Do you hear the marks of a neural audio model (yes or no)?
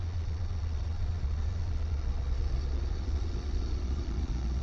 yes